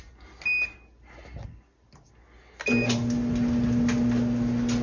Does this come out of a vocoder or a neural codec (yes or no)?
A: no